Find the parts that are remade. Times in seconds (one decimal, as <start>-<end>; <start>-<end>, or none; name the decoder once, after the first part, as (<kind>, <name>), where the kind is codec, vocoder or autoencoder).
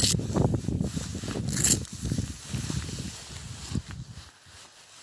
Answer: none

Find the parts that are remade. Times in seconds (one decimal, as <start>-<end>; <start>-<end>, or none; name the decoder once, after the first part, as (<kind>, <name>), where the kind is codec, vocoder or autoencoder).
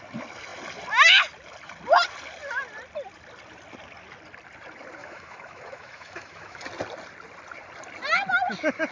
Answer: 5.0-6.6 (autoencoder, DAC-VAE)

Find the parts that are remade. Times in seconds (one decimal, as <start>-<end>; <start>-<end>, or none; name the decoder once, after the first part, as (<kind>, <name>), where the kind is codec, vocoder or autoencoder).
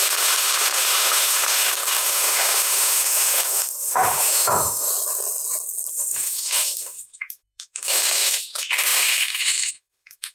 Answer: 0.0-4.9 (autoencoder, DAC-VAE); 5.9-10.3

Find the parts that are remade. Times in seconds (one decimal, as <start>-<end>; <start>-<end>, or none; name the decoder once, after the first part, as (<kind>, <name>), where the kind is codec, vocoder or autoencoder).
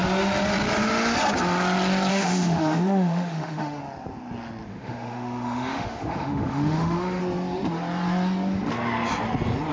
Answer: 2.1-3.8 (autoencoder, DAC-VAE); 4.7-7.2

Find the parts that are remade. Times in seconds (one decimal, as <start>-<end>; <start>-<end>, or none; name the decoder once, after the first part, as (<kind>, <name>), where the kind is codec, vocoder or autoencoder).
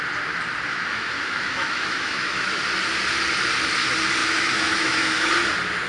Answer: 0.7-2.6 (autoencoder, DAC-VAE); 4.2-5.3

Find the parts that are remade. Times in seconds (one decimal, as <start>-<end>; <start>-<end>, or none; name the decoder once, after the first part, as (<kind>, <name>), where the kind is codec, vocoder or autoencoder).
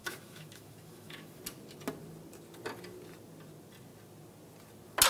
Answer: 0.0-1.4 (autoencoder, DAC-VAE)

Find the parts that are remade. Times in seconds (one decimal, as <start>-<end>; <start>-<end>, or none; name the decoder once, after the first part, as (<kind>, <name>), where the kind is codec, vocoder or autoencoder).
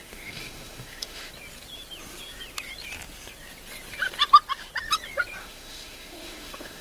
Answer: 0.0-1.3 (autoencoder, DAC-VAE); 5.4-6.8